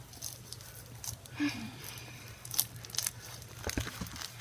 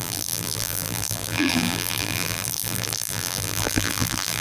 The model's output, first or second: second